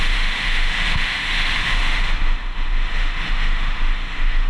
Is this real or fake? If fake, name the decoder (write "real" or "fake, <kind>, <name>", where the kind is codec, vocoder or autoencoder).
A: fake, autoencoder, DAC-VAE